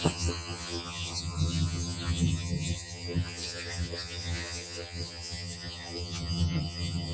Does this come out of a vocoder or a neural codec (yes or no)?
yes